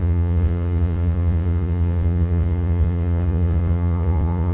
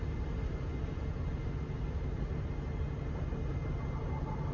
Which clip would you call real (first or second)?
second